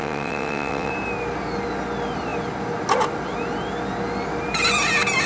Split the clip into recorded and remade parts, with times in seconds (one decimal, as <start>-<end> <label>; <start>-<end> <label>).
0.0-0.9 remade; 0.9-5.3 recorded